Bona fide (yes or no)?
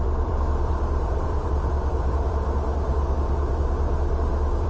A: no